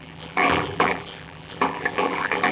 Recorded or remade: remade